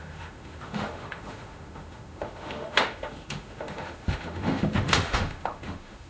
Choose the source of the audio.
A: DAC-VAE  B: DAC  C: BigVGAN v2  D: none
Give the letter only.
A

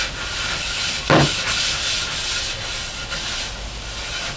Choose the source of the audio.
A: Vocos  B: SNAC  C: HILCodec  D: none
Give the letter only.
D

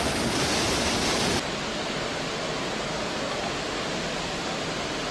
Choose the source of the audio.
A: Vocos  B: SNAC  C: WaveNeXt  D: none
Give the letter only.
D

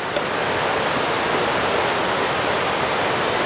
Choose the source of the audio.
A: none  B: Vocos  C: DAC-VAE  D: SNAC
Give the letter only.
A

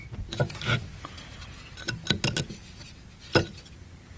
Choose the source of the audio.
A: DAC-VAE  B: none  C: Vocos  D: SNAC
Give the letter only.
B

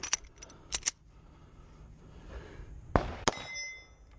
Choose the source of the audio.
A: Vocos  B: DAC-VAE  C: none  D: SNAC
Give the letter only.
C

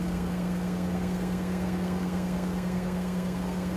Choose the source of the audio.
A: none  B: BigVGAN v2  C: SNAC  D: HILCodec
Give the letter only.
C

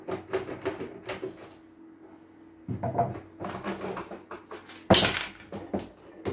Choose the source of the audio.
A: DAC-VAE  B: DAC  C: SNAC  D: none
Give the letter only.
D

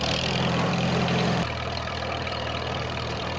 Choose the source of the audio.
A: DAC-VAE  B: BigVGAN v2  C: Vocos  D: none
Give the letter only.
B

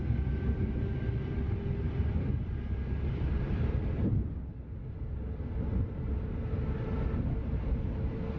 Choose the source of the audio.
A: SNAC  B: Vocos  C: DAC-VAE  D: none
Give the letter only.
D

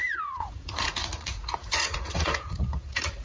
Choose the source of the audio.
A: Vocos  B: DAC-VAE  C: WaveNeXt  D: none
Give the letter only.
A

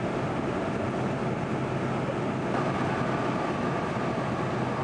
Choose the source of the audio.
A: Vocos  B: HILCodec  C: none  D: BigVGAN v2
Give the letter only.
C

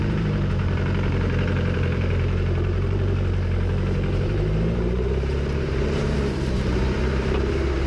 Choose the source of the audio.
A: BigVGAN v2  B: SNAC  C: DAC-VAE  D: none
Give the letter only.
A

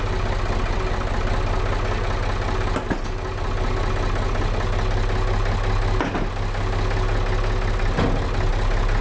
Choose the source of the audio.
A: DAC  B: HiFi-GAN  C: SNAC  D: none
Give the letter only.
D